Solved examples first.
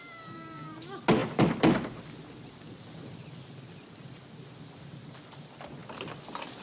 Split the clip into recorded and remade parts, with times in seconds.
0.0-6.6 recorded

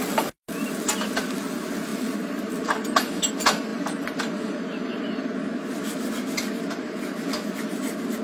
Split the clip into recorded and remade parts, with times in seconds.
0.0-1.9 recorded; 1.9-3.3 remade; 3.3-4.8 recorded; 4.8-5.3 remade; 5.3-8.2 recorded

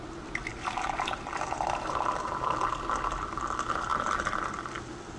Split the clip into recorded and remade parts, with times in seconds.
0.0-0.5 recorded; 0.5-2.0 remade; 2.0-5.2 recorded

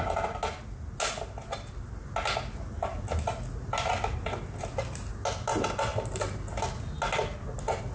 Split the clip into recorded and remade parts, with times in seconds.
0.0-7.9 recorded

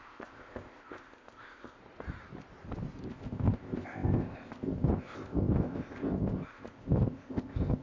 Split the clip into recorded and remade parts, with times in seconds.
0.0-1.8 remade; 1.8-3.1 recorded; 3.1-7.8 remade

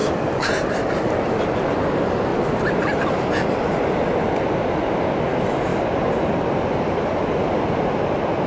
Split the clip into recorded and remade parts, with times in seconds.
0.0-1.4 remade; 1.4-5.7 recorded; 5.7-7.8 remade; 7.8-8.5 recorded

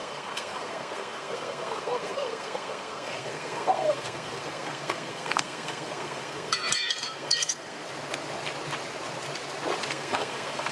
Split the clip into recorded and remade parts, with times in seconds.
0.0-7.8 remade; 7.8-9.9 recorded; 9.9-10.7 remade